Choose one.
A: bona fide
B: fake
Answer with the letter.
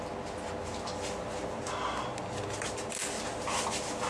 A